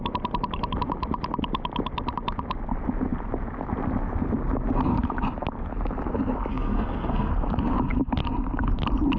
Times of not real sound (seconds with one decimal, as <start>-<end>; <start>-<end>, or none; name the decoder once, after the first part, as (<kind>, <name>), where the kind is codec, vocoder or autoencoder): 6.5-7.3 (codec, SNAC)